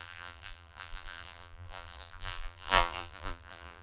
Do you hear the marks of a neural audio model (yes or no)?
yes